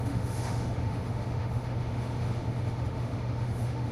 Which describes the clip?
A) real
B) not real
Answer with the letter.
B